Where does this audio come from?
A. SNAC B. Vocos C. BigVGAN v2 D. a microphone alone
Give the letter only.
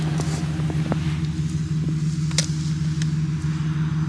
D